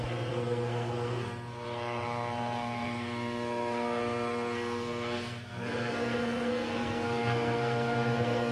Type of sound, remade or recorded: remade